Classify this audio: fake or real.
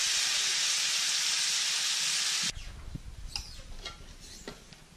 real